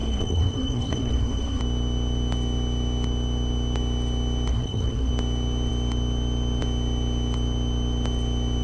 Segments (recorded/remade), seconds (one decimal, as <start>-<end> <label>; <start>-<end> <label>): 0.0-1.6 remade; 1.6-4.5 recorded; 4.5-5.1 remade; 5.1-8.6 recorded